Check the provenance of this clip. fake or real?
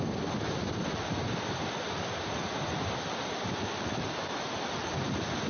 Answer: real